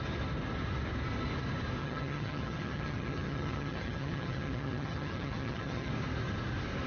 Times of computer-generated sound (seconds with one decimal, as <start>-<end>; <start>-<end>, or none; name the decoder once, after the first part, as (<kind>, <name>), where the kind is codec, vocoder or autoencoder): 1.8-5.9 (vocoder, HiFi-GAN)